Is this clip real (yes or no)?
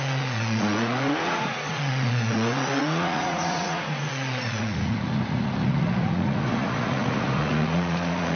no